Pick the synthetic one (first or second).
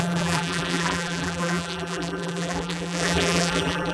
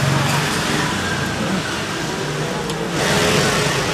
first